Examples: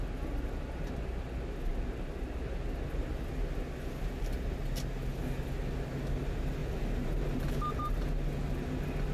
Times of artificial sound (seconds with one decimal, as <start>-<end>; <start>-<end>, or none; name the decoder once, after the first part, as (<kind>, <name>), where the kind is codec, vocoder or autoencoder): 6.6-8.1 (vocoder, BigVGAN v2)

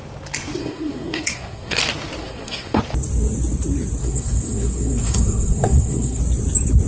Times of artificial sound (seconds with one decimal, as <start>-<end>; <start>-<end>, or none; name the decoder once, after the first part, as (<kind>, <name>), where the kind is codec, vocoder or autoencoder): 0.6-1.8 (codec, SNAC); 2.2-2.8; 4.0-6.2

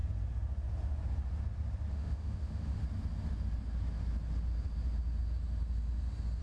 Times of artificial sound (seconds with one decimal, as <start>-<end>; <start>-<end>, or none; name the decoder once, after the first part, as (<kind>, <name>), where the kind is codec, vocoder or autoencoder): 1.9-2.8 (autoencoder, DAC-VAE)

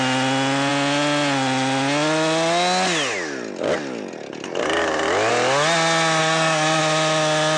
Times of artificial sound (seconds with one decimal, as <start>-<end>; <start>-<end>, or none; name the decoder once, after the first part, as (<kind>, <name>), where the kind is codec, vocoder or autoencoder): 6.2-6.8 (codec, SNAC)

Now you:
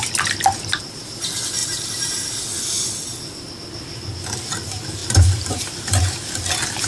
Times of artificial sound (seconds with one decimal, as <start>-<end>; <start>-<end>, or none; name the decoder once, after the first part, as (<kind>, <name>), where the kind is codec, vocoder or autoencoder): 1.6-2.4 (vocoder, BigVGAN v2); 5.0-6.3

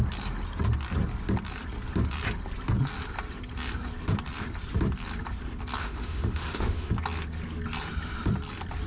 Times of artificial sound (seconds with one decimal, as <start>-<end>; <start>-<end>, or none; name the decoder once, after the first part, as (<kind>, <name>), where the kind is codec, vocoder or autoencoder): 5.8-6.9 (autoencoder, DAC-VAE)

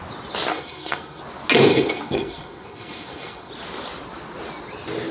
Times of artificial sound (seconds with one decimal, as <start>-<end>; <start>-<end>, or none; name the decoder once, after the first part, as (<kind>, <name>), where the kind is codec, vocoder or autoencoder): 0.5-1.2 (codec, SNAC); 1.7-3.5